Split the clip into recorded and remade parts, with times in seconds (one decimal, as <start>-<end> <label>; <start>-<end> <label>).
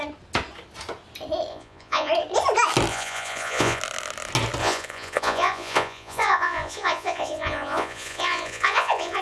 0.0-1.5 recorded; 1.5-2.1 remade; 2.1-2.9 recorded; 2.9-3.8 remade; 3.8-4.6 recorded; 4.6-9.2 remade